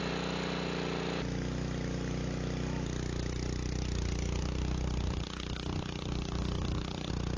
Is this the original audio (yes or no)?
yes